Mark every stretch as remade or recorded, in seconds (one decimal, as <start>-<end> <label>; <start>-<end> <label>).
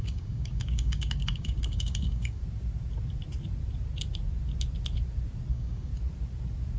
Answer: 0.0-2.4 remade; 2.4-5.5 recorded; 5.5-5.9 remade; 5.9-6.8 recorded